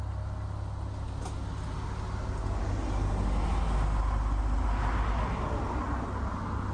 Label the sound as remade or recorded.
recorded